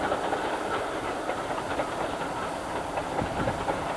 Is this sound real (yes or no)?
yes